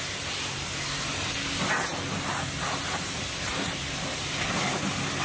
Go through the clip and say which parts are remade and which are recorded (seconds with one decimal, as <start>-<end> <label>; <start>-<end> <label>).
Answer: 0.0-5.2 recorded